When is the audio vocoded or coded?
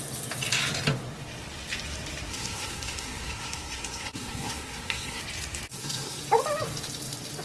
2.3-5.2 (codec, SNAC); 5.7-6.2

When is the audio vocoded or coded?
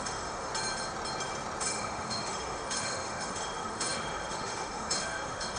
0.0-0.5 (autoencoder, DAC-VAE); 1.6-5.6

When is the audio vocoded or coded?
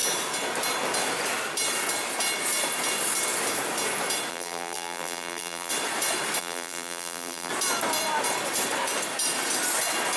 4.3-5.7 (vocoder, BigVGAN v2); 6.4-7.5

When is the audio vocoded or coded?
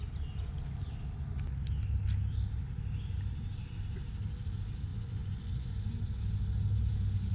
4.9-5.7 (vocoder, Vocos)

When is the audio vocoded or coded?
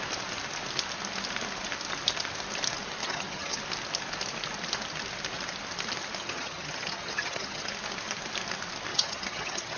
3.0-3.6 (vocoder, HiFi-GAN); 6.2-7.7; 8.9-9.8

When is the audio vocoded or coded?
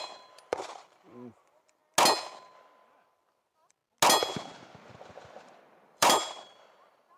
0.0-1.8 (vocoder, BigVGAN v2); 3.4-3.8; 5.1-7.2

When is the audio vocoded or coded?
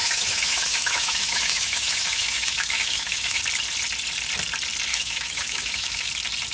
0.0-3.4 (autoencoder, DAC-VAE); 4.9-6.1